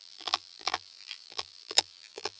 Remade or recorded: remade